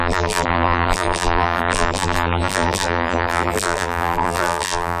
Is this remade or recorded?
remade